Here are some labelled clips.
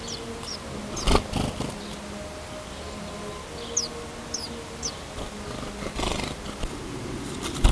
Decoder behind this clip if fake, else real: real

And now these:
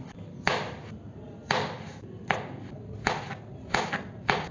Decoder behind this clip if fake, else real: real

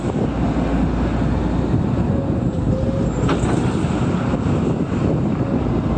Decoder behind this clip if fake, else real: real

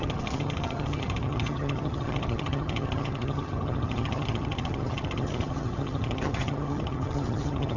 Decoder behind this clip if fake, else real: fake, vocoder, HiFi-GAN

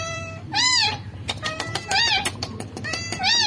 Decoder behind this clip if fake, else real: fake, vocoder, BigVGAN v2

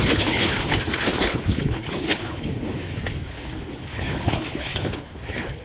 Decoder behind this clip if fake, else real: fake, codec, HILCodec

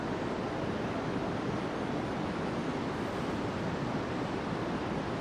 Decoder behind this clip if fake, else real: real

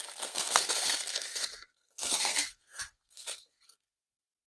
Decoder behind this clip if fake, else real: fake, codec, SNAC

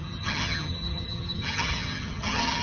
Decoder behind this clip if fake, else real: fake, vocoder, HiFi-GAN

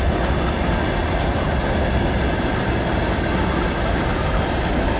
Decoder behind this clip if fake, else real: real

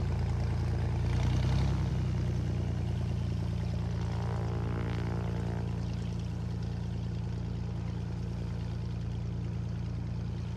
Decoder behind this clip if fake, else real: real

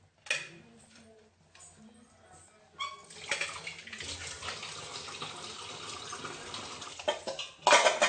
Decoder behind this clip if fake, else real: real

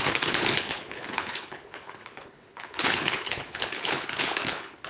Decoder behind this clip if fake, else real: fake, codec, HILCodec